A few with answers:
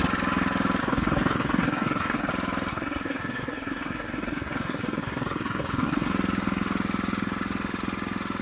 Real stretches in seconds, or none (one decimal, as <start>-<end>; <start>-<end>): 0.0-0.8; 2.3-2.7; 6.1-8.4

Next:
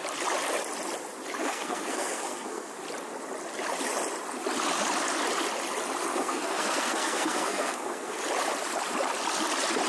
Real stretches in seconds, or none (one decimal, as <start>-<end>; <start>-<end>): 0.0-1.4; 2.7-6.1; 8.2-9.9

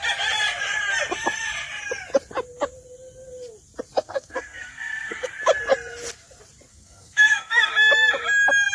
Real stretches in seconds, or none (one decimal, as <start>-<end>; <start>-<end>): 0.0-4.0; 5.3-6.7; 7.7-8.7

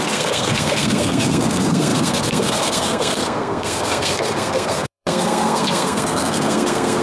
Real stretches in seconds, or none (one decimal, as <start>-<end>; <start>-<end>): none

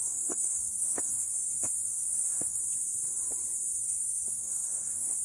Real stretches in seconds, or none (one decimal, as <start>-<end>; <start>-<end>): 2.6-3.8